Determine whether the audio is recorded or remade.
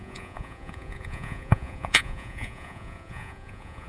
remade